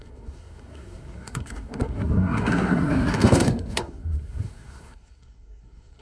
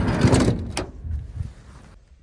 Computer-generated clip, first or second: first